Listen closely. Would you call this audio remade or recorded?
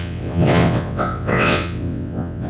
remade